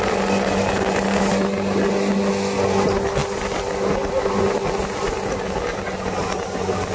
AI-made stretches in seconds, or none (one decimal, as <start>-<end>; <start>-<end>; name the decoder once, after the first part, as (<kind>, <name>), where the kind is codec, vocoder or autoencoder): none